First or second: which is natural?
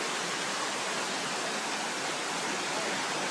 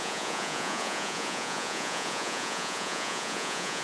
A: first